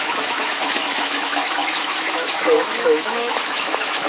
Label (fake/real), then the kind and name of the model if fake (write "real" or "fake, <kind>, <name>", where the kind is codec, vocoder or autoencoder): fake, autoencoder, DAC-VAE